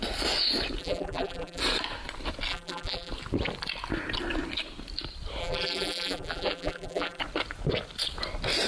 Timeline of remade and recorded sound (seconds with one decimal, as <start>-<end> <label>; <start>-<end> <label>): 0.0-0.8 recorded; 0.8-1.6 remade; 1.6-2.5 recorded; 2.5-3.1 remade; 3.1-5.4 recorded; 5.4-7.2 remade; 7.2-8.7 recorded